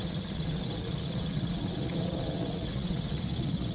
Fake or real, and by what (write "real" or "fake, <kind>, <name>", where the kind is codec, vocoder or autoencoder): fake, vocoder, Vocos